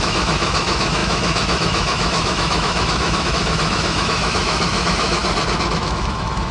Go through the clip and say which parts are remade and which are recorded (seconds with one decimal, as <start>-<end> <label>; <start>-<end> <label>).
0.0-5.2 remade; 5.2-5.7 recorded; 5.7-6.5 remade